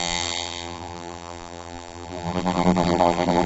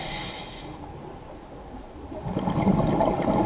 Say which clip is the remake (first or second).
first